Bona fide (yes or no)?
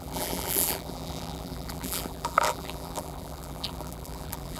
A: no